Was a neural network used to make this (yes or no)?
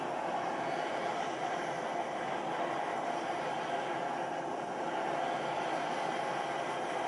no